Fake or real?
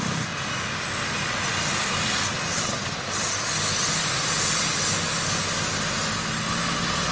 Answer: real